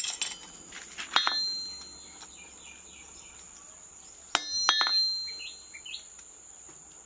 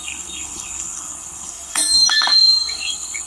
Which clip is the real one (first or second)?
first